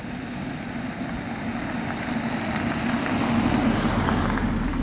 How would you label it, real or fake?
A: real